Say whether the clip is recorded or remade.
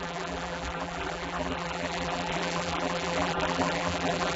remade